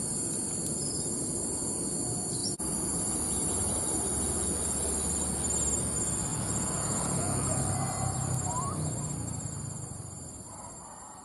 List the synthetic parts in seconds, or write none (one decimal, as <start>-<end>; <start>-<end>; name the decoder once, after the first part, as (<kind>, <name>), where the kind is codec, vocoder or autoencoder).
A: 6.3-7.6 (vocoder, Vocos)